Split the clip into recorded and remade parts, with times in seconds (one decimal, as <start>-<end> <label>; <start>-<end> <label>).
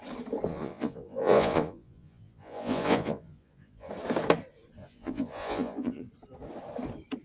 0.0-0.5 recorded; 0.5-3.9 remade; 3.9-4.8 recorded; 4.8-6.1 remade; 6.1-7.2 recorded